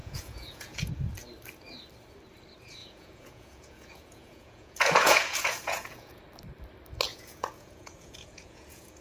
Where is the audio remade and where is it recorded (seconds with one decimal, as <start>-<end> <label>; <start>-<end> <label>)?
0.0-0.9 remade; 0.9-2.8 recorded; 2.8-6.2 remade; 6.2-7.1 recorded; 7.1-9.0 remade